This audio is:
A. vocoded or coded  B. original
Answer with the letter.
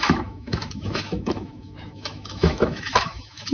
A